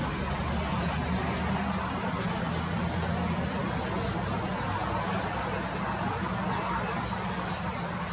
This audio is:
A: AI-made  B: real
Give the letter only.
B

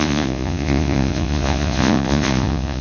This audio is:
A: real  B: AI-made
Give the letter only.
B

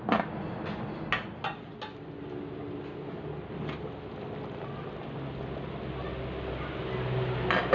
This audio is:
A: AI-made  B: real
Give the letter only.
B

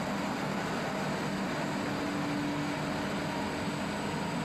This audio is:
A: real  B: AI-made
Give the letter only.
A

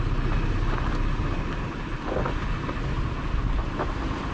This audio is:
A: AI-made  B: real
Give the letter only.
B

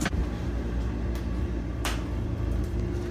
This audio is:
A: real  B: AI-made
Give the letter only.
A